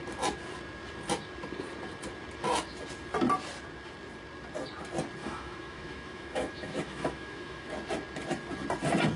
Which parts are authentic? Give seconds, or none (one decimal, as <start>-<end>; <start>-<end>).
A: 0.0-5.2; 7.7-9.2